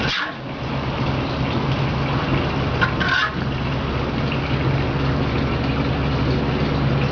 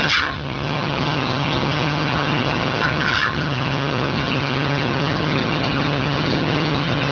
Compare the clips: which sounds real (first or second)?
first